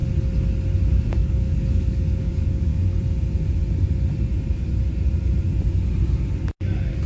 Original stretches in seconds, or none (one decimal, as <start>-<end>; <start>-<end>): 0.0-1.1; 2.7-7.1